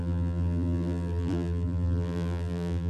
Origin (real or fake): fake